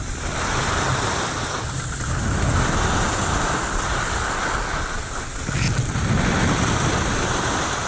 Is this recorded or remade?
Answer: recorded